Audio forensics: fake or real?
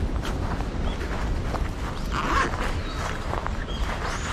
real